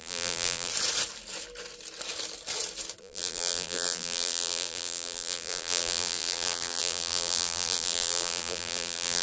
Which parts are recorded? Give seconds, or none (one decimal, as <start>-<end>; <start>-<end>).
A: 0.7-3.0